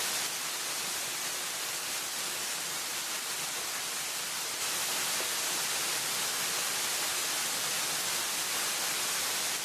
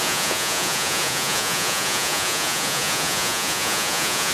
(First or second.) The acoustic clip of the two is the first